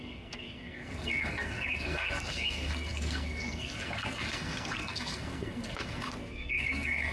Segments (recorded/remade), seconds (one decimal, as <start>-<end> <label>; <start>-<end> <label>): 0.0-7.1 remade